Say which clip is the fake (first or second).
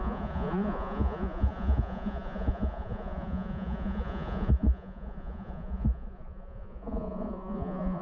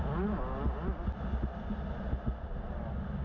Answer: first